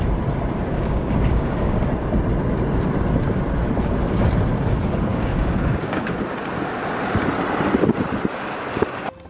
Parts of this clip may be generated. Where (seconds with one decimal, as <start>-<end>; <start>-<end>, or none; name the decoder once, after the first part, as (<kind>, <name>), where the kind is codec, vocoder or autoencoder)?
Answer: 0.7-1.8 (codec, DAC); 5.1-6.1